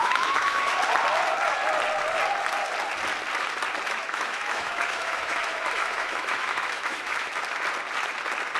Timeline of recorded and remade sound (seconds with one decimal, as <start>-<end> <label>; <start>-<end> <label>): 0.0-0.7 remade; 0.7-4.0 recorded; 4.0-7.3 remade; 7.3-8.6 recorded